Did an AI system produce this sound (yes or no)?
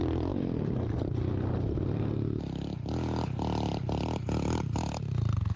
no